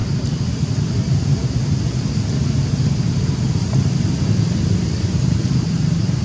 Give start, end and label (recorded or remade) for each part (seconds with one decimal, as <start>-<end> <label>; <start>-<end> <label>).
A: 0.0-1.1 recorded; 1.1-1.6 remade; 1.6-5.0 recorded; 5.0-6.2 remade